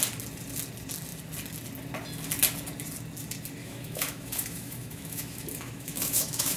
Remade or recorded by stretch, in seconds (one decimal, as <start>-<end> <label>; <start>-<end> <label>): 0.0-3.6 recorded; 3.6-6.6 remade